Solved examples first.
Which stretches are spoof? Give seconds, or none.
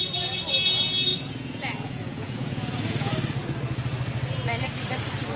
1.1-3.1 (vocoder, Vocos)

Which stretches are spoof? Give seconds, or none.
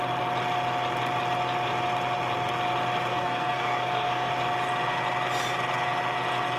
3.1-4.3 (codec, SNAC)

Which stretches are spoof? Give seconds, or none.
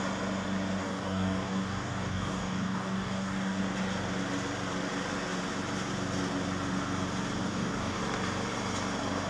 0.8-3.6 (codec, DAC); 7.4-8.0